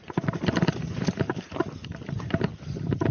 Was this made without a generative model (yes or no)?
yes